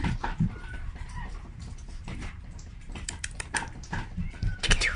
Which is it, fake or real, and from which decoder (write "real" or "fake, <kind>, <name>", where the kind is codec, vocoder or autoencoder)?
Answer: fake, vocoder, BigVGAN v2